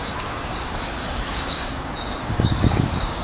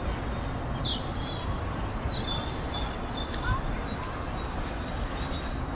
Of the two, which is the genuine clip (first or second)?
second